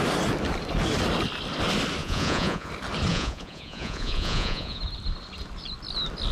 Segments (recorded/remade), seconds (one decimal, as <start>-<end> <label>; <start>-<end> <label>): 0.0-2.0 recorded; 2.0-2.7 remade; 2.7-3.1 recorded; 3.1-4.8 remade; 4.8-6.3 recorded